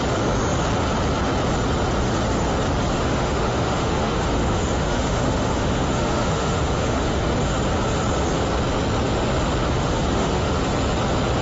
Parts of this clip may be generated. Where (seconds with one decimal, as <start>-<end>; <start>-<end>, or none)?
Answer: 2.9-7.3; 9.6-10.6